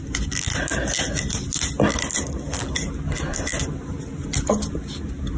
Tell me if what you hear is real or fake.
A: real